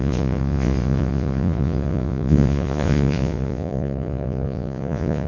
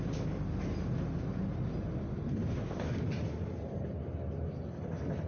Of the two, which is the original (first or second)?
second